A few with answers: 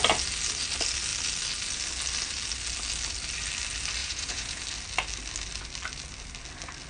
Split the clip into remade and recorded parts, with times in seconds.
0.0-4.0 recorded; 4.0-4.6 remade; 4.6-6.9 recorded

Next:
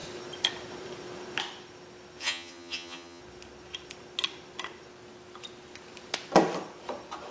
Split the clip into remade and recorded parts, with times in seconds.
0.0-2.2 recorded; 2.2-3.2 remade; 3.2-7.3 recorded

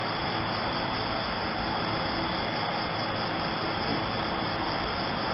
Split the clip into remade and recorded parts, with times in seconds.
0.0-3.2 recorded; 3.2-5.3 remade

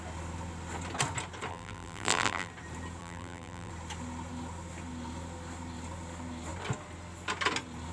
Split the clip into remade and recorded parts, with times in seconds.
0.0-1.5 recorded; 1.5-2.5 remade; 2.5-3.0 recorded; 3.0-3.7 remade; 3.7-7.9 recorded